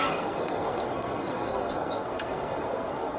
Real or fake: fake